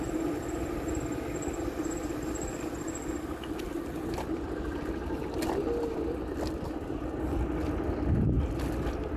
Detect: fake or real real